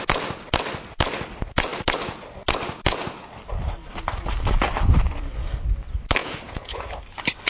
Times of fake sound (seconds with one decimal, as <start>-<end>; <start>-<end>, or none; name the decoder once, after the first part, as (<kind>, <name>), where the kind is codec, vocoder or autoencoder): 6.2-6.9 (vocoder, Vocos)

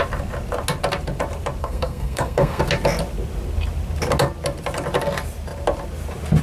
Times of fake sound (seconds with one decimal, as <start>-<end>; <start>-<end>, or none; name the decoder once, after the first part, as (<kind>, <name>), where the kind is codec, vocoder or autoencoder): 1.6-2.6 (codec, SNAC)

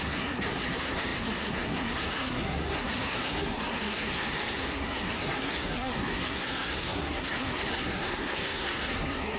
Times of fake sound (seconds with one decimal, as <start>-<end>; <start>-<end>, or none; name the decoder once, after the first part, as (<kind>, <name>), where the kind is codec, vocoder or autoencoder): 0.0-9.4 (codec, SNAC)

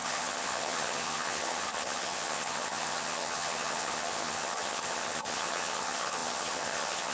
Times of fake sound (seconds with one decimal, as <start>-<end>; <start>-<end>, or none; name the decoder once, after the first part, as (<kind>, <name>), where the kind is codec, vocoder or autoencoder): 0.0-7.1 (vocoder, HiFi-GAN)

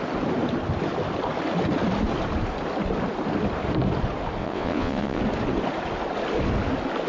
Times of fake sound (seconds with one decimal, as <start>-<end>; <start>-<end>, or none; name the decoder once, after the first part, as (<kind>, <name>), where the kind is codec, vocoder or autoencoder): 4.4-5.2 (vocoder, WaveNeXt)

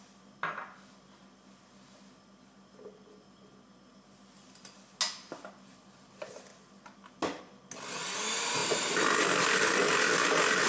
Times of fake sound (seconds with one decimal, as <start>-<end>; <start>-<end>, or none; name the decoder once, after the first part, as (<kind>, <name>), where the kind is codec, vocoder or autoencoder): none

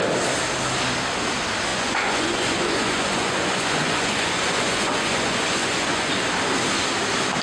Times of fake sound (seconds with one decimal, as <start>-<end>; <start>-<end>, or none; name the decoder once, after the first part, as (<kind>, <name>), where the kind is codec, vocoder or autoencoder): 1.7-6.1 (vocoder, Vocos)